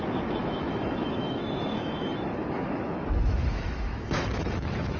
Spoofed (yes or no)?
yes